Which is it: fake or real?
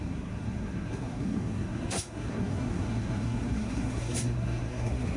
fake